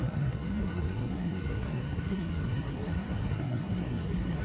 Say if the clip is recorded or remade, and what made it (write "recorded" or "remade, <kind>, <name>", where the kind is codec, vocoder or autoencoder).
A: remade, codec, SNAC